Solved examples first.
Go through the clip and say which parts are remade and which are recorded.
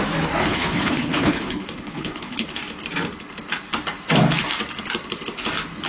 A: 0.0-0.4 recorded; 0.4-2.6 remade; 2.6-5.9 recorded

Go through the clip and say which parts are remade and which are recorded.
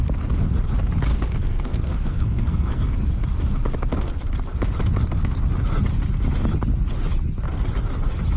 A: 0.0-1.1 recorded; 1.1-3.1 remade; 3.1-8.4 recorded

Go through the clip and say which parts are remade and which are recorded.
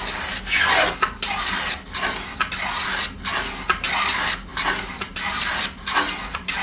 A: 0.0-6.6 recorded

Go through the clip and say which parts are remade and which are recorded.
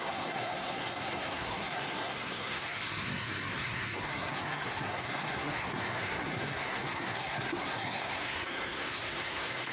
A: 0.0-9.7 remade